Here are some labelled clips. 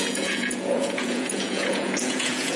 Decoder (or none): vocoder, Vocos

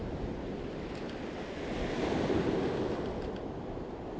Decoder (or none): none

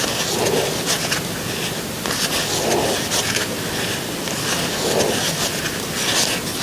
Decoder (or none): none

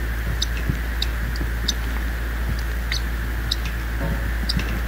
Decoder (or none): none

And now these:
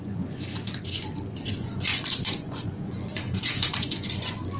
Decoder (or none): vocoder, Vocos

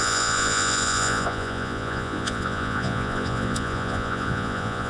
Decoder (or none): vocoder, Vocos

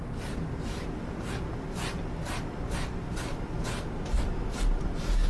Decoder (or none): none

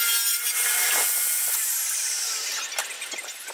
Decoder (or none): none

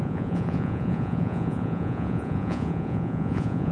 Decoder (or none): vocoder, Vocos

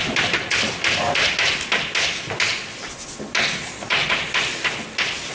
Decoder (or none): none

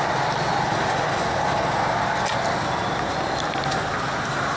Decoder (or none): none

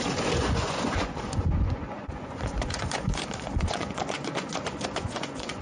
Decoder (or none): vocoder, Vocos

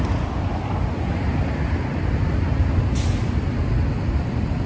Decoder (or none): none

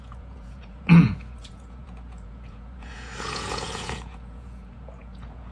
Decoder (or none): vocoder, Vocos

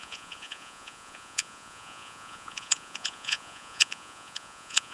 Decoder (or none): vocoder, Vocos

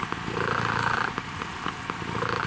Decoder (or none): none